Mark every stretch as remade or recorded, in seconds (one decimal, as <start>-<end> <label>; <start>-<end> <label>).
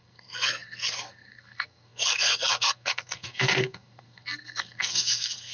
0.0-5.5 remade